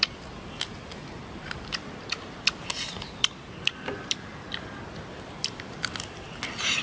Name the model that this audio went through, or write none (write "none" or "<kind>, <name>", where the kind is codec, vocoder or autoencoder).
none